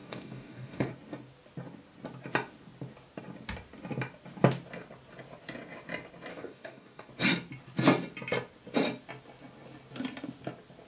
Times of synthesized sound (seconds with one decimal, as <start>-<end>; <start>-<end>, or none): 0.0-0.9; 6.3-7.1